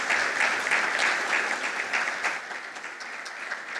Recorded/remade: recorded